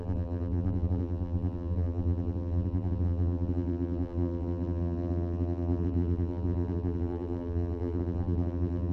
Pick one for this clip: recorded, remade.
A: remade